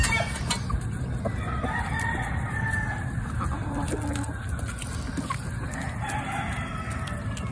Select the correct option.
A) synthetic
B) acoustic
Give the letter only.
B